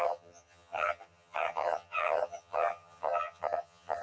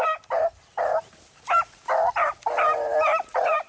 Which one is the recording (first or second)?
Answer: second